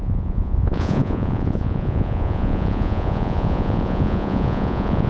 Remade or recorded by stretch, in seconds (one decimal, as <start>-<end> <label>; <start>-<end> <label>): 0.0-5.1 remade